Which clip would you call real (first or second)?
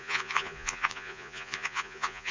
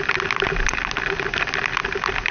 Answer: second